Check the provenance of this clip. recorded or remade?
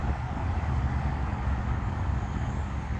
remade